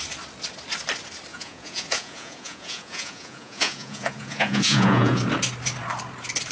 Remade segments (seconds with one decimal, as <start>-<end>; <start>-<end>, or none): 1.3-5.2